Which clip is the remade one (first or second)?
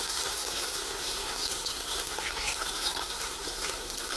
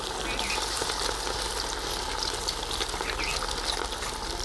first